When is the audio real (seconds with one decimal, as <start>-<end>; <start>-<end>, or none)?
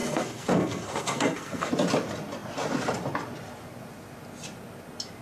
1.7-5.2